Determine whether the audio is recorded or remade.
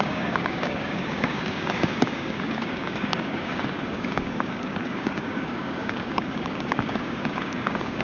remade